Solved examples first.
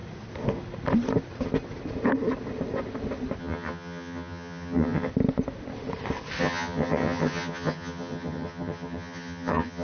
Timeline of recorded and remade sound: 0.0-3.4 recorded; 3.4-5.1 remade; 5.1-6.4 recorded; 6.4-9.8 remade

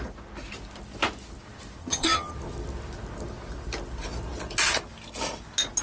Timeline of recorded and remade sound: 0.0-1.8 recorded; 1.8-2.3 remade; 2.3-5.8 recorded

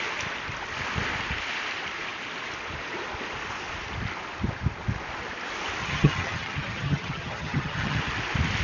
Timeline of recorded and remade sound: 0.0-5.8 recorded; 5.8-8.0 remade; 8.0-8.6 recorded

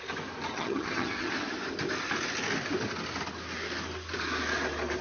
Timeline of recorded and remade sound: 0.0-0.5 recorded; 0.5-1.3 remade; 1.3-5.0 recorded

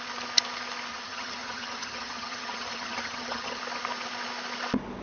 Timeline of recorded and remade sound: 0.0-0.9 recorded; 0.9-3.6 remade; 3.6-5.0 recorded